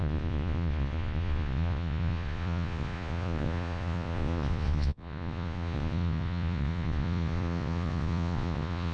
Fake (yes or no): yes